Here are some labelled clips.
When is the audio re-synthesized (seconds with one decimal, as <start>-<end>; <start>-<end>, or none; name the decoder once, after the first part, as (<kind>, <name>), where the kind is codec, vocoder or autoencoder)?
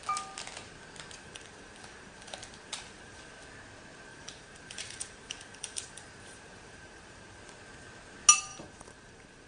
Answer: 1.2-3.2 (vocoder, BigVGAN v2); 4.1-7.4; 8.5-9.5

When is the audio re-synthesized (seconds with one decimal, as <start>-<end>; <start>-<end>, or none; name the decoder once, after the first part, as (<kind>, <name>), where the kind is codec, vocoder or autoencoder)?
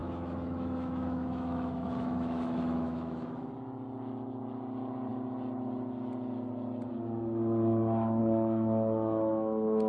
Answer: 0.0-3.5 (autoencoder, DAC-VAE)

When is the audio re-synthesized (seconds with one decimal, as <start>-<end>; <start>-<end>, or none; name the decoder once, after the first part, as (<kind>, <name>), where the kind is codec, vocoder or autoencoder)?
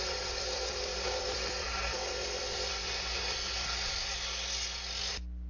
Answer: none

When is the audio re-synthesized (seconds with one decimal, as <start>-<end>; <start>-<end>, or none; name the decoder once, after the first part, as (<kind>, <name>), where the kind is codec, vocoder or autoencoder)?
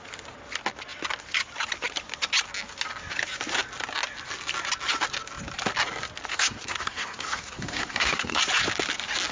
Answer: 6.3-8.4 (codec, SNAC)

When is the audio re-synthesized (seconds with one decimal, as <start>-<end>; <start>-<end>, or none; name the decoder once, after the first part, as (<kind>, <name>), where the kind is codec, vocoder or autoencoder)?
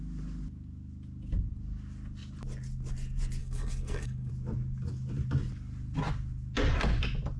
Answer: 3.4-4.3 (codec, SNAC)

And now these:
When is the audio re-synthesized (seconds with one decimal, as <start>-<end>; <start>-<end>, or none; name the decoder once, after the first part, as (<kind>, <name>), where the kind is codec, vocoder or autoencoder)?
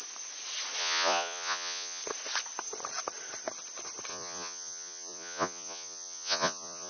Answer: 0.8-2.0 (vocoder, Vocos); 4.1-6.9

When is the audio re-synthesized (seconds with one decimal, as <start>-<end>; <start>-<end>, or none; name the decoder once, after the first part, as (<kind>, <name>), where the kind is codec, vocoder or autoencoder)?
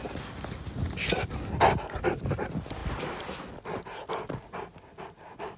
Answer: none